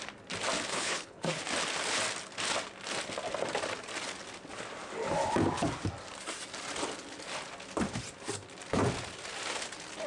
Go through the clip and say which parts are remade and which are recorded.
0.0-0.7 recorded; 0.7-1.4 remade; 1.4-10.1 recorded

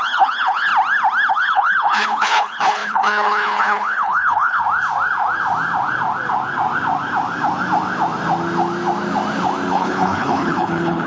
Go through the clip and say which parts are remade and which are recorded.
0.0-0.7 remade; 0.7-1.3 recorded; 1.3-4.6 remade; 4.6-9.7 recorded; 9.7-11.1 remade

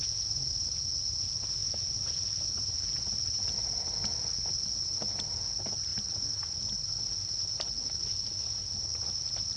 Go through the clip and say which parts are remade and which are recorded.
0.0-9.6 recorded

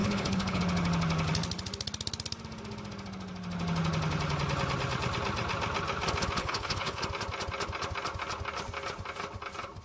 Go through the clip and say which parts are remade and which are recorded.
0.0-0.6 remade; 0.6-6.4 recorded; 6.4-7.0 remade; 7.0-9.8 recorded

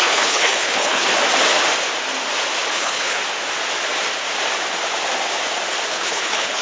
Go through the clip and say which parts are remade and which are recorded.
0.0-1.1 remade; 1.1-2.7 recorded; 2.7-3.2 remade; 3.2-5.9 recorded; 5.9-6.6 remade

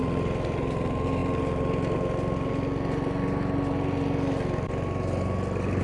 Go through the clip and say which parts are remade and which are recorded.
0.0-5.8 recorded

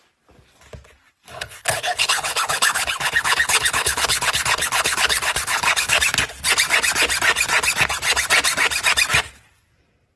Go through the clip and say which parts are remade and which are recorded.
0.0-1.3 recorded; 1.3-6.0 remade; 6.0-10.2 recorded